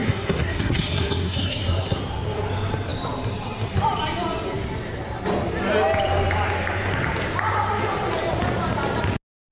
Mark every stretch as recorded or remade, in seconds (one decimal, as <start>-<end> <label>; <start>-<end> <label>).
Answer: 0.0-2.0 remade; 2.0-9.5 recorded